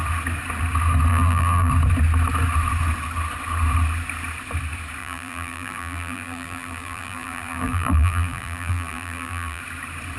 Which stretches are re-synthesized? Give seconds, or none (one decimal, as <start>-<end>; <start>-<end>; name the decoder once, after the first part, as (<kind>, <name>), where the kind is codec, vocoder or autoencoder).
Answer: 1.1-1.7 (vocoder, BigVGAN v2); 5.0-9.6